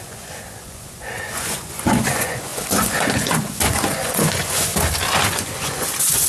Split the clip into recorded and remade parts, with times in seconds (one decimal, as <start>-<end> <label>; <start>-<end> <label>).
0.0-4.7 remade; 4.7-5.3 recorded; 5.3-6.3 remade